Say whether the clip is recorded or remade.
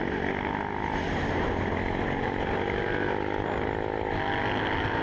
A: recorded